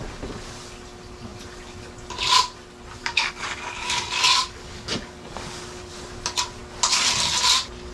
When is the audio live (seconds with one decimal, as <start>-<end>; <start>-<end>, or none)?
0.0-3.0; 5.9-7.9